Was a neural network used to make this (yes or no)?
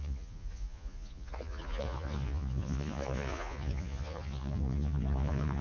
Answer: yes